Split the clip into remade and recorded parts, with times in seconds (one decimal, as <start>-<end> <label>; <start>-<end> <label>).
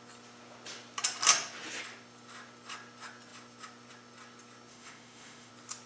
0.0-4.7 recorded; 4.7-5.5 remade; 5.5-5.9 recorded